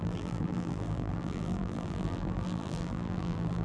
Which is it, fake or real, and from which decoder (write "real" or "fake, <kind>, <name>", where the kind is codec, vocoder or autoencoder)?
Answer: fake, vocoder, BigVGAN v2